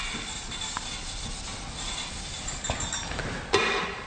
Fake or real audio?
real